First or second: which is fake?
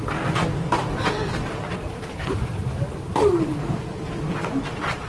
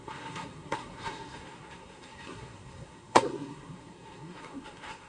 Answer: second